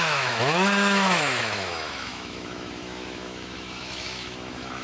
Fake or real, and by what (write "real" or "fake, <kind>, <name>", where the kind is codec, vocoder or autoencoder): fake, autoencoder, DAC-VAE